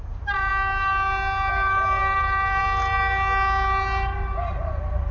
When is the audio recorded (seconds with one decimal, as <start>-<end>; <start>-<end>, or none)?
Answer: 0.5-1.5; 2.6-4.6